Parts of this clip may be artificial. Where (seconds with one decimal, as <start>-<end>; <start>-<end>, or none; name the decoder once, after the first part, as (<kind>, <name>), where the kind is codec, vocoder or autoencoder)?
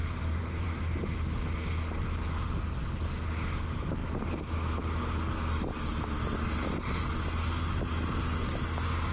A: 0.0-0.8 (vocoder, BigVGAN v2)